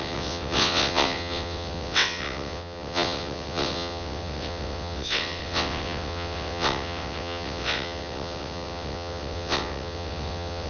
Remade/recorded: remade